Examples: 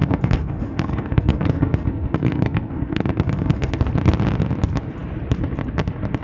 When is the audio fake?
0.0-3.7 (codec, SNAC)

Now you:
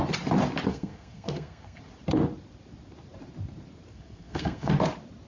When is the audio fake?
0.7-1.8 (codec, SNAC); 3.9-4.7

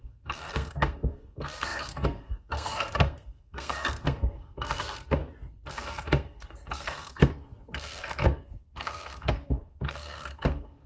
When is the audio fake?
0.0-5.2 (codec, SNAC); 5.7-10.9

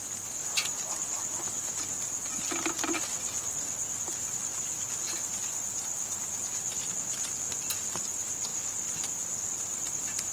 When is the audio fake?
none

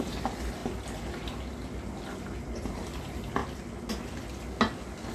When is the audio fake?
none

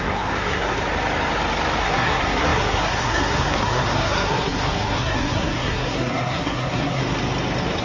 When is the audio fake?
0.0-0.8 (codec, SNAC); 1.8-7.0

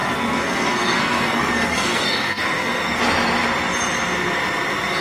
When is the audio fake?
0.0-3.0 (codec, SNAC)

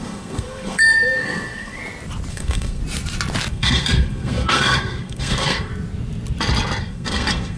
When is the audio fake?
0.0-1.8 (codec, SNAC); 2.3-2.8; 3.5-5.7; 6.8-7.6